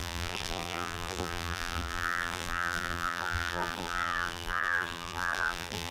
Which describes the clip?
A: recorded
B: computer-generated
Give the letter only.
B